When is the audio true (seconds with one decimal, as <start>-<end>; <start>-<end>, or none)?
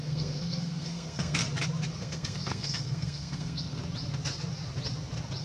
1.4-2.0; 3.8-5.4